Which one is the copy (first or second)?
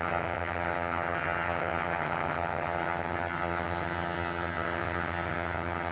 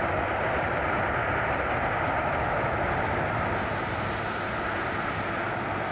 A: first